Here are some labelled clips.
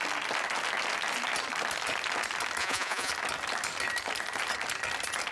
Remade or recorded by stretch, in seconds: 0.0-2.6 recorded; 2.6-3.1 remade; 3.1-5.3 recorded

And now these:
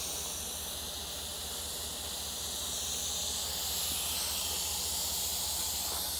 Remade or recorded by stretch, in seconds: 0.0-6.2 recorded

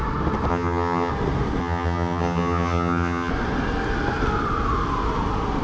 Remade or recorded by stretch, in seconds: 0.0-0.5 recorded; 0.5-1.1 remade; 1.1-1.6 recorded; 1.6-3.3 remade; 3.3-5.6 recorded

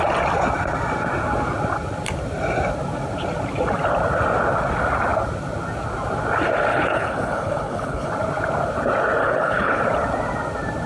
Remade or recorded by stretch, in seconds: 0.0-6.7 recorded; 6.7-8.1 remade; 8.1-9.2 recorded; 9.2-9.8 remade; 9.8-10.9 recorded

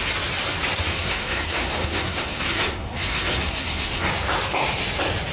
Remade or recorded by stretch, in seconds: 0.0-0.9 recorded; 0.9-4.1 remade; 4.1-5.3 recorded

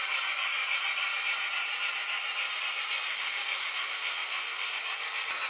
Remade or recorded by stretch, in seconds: 0.0-3.1 recorded; 3.1-4.8 remade; 4.8-5.5 recorded